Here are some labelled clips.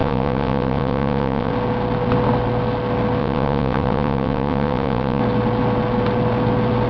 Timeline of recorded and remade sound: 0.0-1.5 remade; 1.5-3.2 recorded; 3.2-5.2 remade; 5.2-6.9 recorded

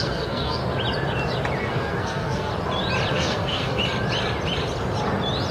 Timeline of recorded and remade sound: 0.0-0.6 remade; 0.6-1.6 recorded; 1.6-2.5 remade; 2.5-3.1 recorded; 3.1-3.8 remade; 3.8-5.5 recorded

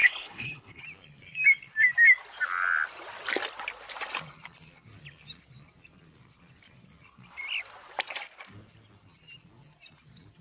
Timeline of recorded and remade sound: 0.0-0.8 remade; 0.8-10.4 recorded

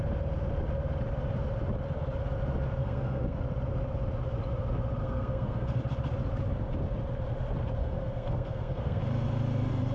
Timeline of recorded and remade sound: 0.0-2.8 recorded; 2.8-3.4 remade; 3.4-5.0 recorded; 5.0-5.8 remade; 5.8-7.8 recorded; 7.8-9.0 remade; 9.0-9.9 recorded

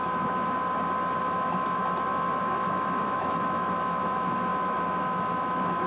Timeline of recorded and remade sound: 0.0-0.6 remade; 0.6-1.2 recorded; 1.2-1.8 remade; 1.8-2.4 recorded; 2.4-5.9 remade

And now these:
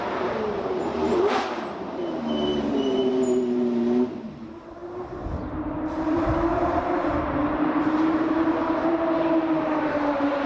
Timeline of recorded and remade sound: 0.0-10.5 remade

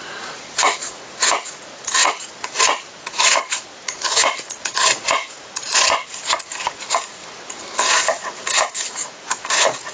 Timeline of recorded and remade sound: 0.0-7.2 remade; 7.2-7.9 recorded; 7.9-9.9 remade